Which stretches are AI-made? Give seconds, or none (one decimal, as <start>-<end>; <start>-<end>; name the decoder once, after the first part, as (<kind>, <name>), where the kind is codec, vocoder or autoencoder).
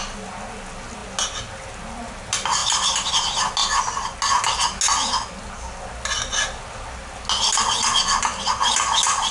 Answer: none